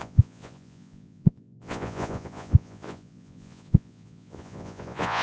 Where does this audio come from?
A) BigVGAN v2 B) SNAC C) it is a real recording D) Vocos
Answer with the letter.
D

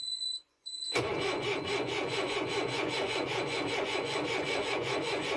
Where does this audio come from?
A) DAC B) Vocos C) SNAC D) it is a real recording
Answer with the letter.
B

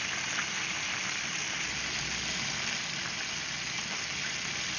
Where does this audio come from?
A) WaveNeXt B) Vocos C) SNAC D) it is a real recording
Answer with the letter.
D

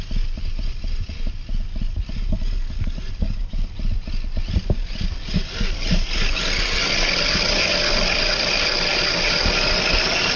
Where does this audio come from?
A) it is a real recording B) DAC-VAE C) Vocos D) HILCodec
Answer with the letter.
A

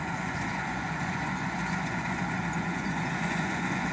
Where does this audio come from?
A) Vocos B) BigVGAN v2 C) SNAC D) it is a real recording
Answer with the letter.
A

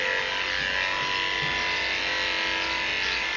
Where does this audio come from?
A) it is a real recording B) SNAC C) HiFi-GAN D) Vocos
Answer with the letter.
A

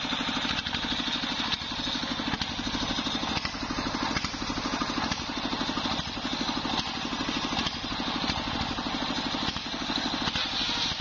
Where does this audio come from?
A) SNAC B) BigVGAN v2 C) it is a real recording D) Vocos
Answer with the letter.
C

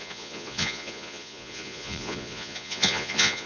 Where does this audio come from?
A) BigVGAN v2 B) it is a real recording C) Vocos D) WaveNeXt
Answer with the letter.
C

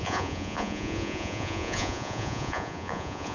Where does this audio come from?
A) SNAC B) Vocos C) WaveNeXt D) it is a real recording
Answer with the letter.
B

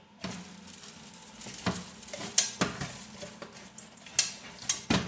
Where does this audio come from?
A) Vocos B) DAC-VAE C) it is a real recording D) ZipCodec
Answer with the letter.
C